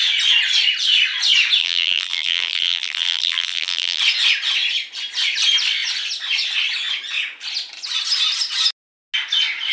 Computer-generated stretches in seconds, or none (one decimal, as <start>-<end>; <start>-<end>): 1.6-4.0